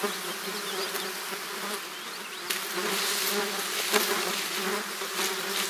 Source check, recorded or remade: recorded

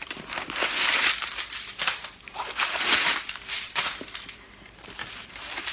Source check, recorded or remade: remade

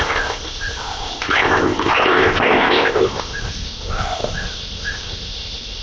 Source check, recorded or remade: remade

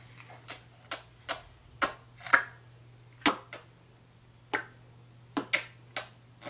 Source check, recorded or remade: recorded